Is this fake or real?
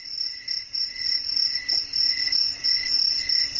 real